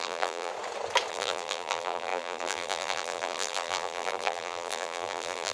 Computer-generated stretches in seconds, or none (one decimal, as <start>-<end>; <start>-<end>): 0.0-0.5; 1.1-5.5